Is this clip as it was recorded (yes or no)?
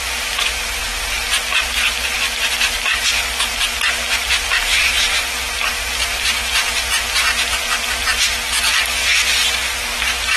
yes